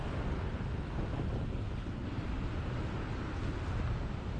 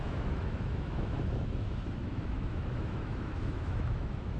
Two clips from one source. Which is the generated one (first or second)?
second